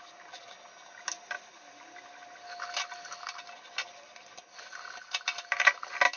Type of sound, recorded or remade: recorded